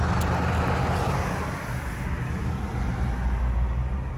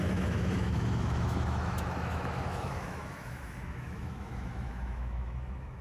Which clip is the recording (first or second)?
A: first